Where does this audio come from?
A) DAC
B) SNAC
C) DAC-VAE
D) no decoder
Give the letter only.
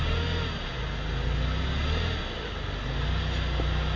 D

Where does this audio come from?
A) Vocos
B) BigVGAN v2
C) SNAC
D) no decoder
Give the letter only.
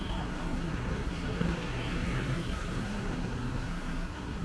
C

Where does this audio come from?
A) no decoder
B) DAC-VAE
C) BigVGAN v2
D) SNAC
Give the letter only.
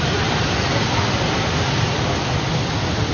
C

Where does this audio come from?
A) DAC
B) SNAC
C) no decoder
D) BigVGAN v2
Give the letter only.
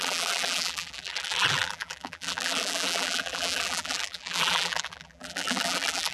D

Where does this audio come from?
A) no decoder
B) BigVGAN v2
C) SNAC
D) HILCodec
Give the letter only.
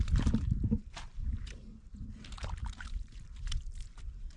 B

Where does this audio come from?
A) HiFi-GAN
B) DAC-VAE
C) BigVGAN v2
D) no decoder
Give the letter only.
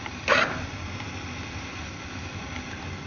D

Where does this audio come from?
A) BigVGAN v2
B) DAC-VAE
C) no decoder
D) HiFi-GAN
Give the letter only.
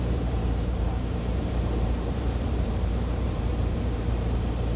A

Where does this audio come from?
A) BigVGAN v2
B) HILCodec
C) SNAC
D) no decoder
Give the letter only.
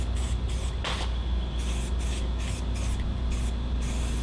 D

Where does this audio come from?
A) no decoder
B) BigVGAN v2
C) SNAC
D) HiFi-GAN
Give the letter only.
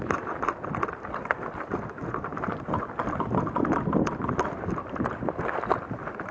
A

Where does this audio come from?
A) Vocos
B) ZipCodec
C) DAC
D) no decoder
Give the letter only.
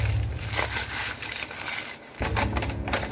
D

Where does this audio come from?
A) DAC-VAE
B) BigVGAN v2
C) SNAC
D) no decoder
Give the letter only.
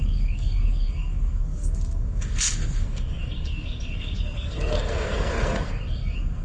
C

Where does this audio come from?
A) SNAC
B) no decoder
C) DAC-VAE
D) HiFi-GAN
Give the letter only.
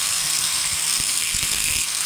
A